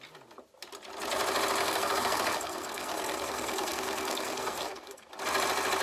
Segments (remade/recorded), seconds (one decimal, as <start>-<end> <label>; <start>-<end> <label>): 0.0-1.6 recorded; 1.6-5.1 remade; 5.1-5.8 recorded